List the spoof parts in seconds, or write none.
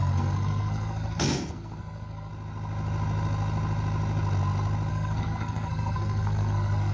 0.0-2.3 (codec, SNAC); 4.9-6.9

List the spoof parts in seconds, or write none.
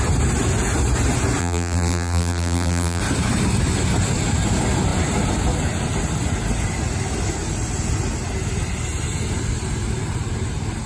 1.4-3.0 (vocoder, BigVGAN v2)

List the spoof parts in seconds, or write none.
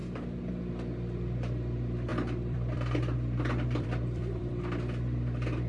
0.0-0.6 (vocoder, BigVGAN v2); 2.1-4.5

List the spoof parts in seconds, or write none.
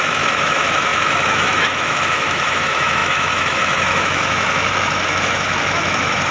0.0-6.3 (autoencoder, DAC-VAE)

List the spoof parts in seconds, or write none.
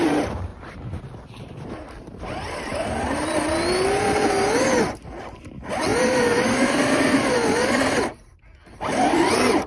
0.0-0.5 (vocoder, BigVGAN v2); 1.4-2.7; 4.9-9.7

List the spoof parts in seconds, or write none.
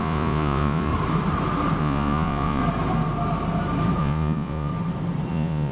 0.0-0.9 (vocoder, Vocos); 1.8-2.6; 4.0-4.7; 5.3-5.7